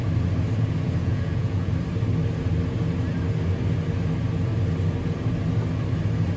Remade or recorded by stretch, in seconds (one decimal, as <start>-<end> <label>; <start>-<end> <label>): 0.0-1.0 recorded; 1.0-1.7 remade; 1.7-6.4 recorded